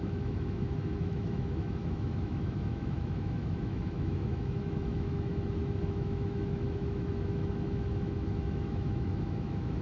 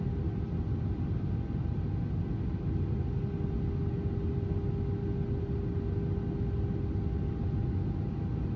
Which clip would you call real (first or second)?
second